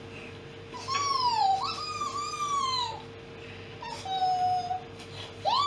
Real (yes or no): yes